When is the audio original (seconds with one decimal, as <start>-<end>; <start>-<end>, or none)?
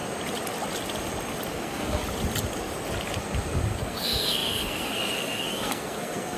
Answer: 0.0-1.5; 2.0-3.2